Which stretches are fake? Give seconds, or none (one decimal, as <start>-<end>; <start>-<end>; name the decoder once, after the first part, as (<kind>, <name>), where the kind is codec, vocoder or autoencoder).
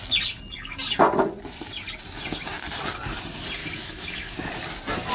3.6-4.5 (autoencoder, DAC-VAE)